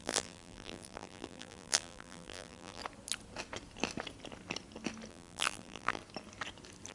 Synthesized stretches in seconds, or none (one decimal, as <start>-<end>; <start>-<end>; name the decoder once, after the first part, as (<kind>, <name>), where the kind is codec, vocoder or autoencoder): 0.0-2.8 (vocoder, BigVGAN v2); 5.1-6.0